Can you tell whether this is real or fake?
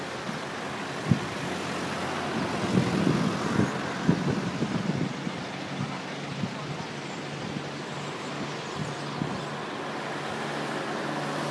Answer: real